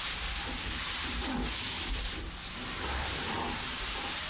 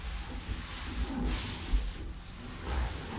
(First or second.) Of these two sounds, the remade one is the first